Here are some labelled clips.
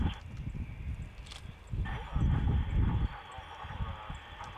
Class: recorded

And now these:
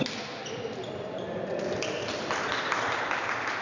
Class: recorded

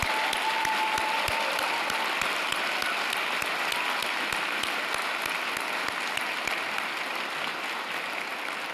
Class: recorded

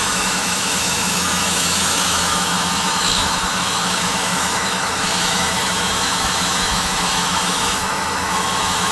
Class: remade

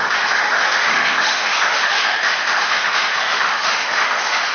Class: remade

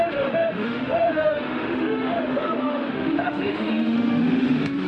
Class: remade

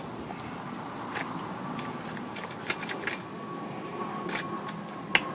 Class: recorded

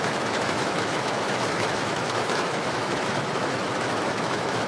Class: remade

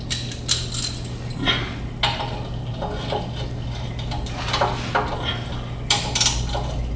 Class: recorded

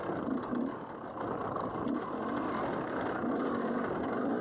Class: recorded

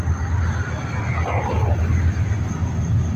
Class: recorded